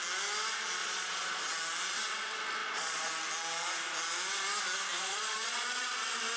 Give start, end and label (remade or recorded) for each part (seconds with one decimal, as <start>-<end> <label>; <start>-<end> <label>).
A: 0.0-0.8 recorded; 0.8-1.4 remade; 1.4-2.6 recorded; 2.6-3.1 remade; 3.1-4.9 recorded; 4.9-5.9 remade; 5.9-6.4 recorded